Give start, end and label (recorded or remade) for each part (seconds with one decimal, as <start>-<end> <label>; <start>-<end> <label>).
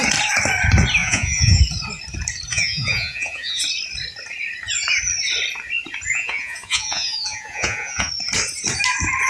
0.0-1.0 recorded; 1.0-1.6 remade; 1.6-2.5 recorded; 2.5-3.6 remade; 3.6-6.1 recorded; 6.1-8.1 remade; 8.1-9.3 recorded